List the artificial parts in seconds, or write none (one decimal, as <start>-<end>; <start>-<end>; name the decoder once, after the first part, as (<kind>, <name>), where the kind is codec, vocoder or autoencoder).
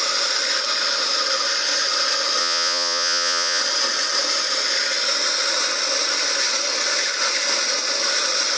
2.4-3.6 (vocoder, Vocos)